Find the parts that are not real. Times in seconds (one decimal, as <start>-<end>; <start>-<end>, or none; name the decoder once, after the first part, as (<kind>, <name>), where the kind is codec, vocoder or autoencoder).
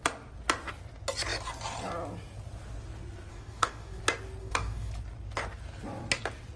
3.3-4.0 (codec, DAC); 4.4-4.9